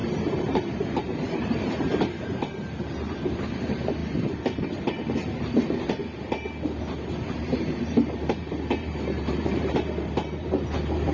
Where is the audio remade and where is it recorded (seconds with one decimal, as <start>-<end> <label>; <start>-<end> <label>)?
0.0-6.0 remade; 6.0-7.4 recorded; 7.4-11.1 remade